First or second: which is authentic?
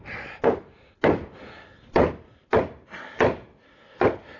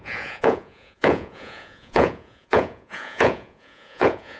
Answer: first